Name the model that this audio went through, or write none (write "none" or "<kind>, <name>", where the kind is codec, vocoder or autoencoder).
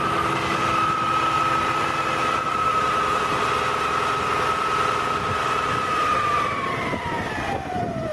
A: none